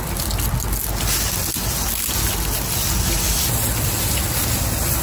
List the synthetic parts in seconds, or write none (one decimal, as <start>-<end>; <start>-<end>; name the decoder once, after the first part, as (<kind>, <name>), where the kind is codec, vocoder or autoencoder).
none